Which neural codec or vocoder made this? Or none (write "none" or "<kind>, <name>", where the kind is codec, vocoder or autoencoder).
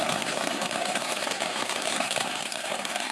codec, SNAC